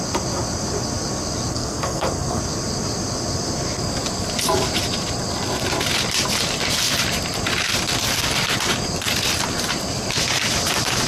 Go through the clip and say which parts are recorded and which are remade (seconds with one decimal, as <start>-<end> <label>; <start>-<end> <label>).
0.0-1.5 recorded; 1.5-2.4 remade; 2.4-11.1 recorded